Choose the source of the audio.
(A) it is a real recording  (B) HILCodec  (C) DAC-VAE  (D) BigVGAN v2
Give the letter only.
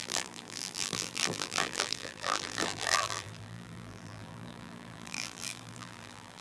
D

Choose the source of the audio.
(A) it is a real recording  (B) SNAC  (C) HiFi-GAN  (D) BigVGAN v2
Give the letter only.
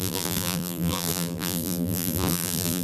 D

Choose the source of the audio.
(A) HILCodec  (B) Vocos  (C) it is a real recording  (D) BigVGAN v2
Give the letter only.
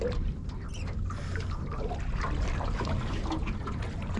C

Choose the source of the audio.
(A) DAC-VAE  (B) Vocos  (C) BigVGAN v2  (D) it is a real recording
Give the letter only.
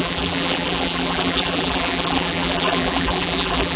C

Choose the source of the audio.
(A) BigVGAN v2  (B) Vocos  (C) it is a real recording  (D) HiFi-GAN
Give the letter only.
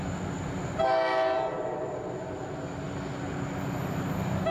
C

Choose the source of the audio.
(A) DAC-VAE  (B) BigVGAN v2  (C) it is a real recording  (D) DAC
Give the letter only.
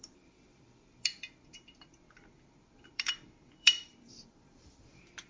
B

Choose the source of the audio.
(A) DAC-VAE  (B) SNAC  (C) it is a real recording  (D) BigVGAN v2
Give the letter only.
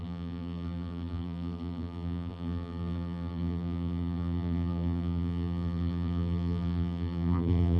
D